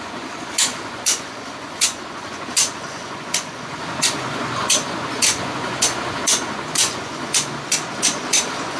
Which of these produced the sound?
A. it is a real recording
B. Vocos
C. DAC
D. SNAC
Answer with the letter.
B